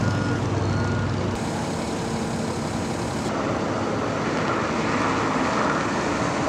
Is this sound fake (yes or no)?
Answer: no